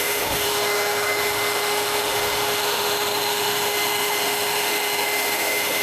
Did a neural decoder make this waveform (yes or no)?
yes